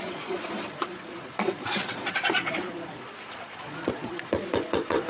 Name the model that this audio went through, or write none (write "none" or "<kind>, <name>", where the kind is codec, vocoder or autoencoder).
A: vocoder, Vocos